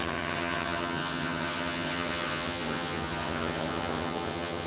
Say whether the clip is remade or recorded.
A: remade